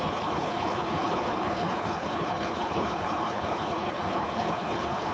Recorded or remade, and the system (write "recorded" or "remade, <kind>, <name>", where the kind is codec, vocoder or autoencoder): remade, codec, HILCodec